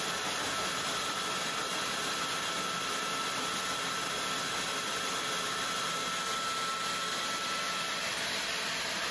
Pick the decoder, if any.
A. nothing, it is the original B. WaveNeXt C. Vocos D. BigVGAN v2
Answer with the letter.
A